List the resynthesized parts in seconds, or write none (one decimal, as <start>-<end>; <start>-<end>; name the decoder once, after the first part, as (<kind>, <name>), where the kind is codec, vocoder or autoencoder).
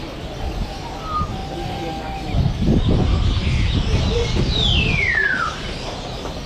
none